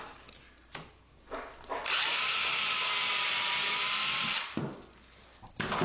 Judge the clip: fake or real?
real